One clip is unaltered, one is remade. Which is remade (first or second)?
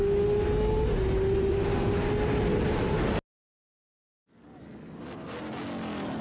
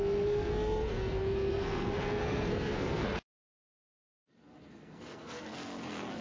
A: second